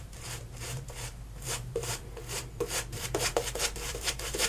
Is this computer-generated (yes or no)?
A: yes